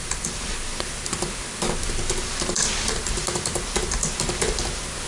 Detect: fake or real real